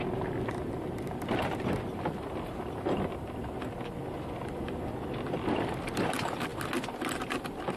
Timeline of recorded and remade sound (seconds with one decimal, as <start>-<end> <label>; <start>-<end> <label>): 0.0-1.9 recorded; 1.9-3.5 remade; 3.5-7.8 recorded